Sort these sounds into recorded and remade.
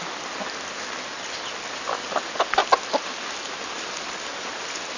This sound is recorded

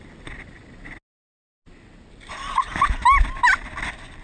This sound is recorded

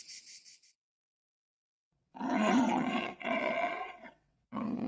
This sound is remade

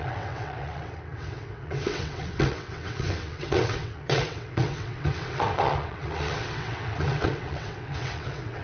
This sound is remade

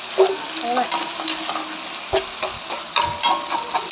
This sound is recorded